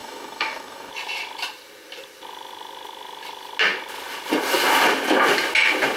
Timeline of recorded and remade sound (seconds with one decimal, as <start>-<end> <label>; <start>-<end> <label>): 0.0-0.9 remade; 0.9-6.0 recorded